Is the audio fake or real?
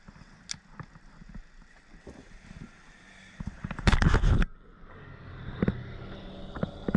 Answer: real